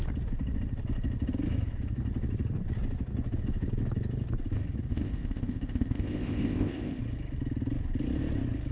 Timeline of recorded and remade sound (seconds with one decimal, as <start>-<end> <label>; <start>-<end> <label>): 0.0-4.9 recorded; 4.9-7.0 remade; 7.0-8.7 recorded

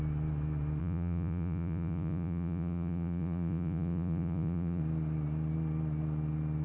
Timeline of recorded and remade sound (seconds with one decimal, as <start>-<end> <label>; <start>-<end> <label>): 0.0-0.8 recorded; 0.8-4.8 remade; 4.8-6.6 recorded

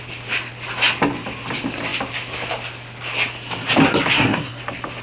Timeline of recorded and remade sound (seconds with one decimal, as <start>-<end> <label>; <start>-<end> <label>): 0.0-4.1 recorded; 4.1-4.6 remade; 4.6-5.0 recorded

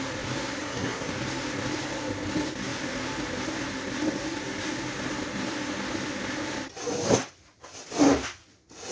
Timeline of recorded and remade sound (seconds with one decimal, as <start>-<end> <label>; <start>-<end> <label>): 0.0-0.6 recorded; 0.6-1.1 remade; 1.1-8.9 recorded